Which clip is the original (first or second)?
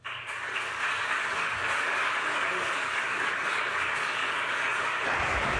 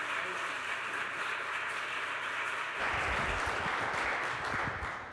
second